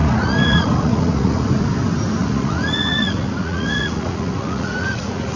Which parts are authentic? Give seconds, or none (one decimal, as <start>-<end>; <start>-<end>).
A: 1.5-2.2